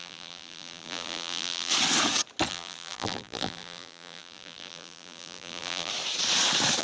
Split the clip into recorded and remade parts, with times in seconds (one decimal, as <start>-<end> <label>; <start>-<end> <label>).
0.0-1.7 remade; 1.7-2.5 recorded; 2.5-5.9 remade; 5.9-6.8 recorded